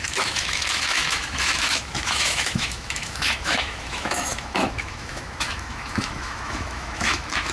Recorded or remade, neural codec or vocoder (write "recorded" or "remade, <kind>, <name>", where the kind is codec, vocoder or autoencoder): remade, autoencoder, DAC-VAE